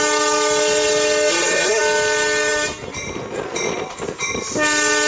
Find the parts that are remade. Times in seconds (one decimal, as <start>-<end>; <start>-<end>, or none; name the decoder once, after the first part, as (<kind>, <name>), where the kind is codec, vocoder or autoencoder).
1.3-1.8 (codec, SNAC)